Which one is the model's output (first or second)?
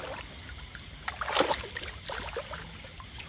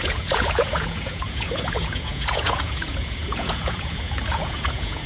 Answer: second